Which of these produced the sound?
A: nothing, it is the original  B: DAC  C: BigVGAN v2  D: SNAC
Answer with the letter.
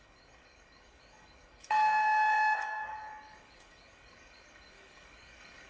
B